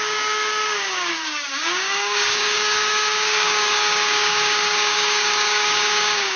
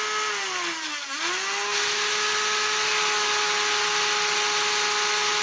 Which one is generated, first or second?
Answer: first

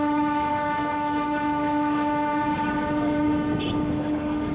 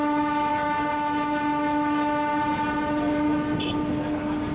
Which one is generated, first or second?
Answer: first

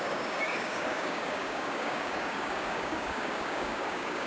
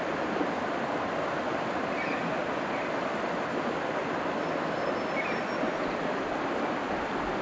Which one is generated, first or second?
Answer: first